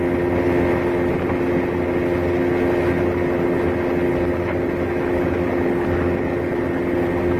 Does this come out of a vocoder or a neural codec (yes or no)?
no